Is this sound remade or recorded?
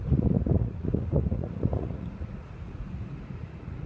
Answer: remade